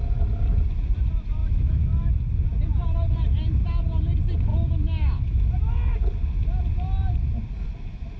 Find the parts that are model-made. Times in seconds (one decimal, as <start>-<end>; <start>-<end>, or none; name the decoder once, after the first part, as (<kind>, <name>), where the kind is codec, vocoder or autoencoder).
1.4-2.1 (autoencoder, DAC-VAE); 4.5-5.5